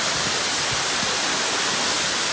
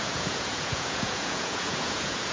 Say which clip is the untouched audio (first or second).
first